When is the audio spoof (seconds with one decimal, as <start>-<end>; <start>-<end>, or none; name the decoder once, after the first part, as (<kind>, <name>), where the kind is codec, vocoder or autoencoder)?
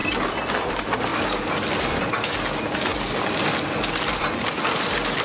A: none